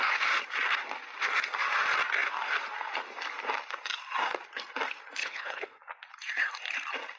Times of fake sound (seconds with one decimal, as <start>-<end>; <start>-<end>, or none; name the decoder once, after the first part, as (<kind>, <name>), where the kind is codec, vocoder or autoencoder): 5.2-5.8 (codec, HILCodec)